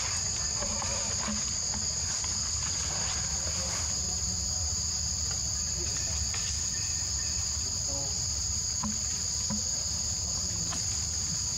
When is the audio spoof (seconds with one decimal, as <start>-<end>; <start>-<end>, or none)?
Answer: 1.0-1.9

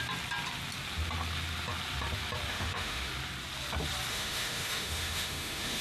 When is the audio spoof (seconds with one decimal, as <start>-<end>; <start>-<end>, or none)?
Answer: 2.5-3.1; 4.1-5.8